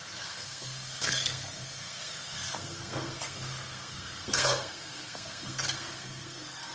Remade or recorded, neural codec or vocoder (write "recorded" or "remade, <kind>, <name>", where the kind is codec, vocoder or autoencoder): remade, codec, SNAC